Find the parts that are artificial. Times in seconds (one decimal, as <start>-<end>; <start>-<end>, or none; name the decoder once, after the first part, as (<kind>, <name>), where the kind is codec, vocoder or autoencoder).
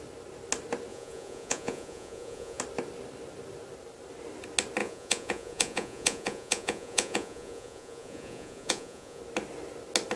0.9-2.6 (vocoder, Vocos); 4.8-9.2